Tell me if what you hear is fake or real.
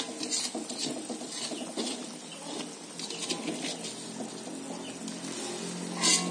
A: real